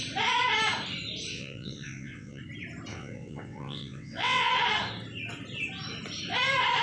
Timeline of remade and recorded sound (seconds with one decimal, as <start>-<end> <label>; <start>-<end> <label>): 0.0-1.3 recorded; 1.3-2.4 remade; 2.4-2.9 recorded; 2.9-4.5 remade; 4.5-6.8 recorded